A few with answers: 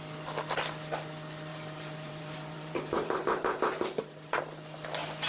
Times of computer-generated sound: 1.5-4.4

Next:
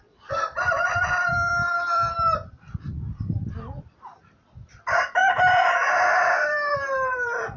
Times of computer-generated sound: 0.0-7.6

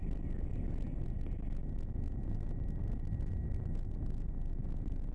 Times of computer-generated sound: 0.0-0.5

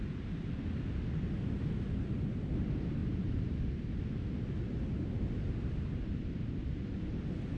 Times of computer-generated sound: none

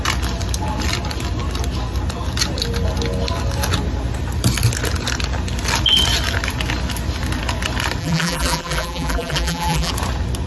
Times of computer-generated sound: 8.0-9.9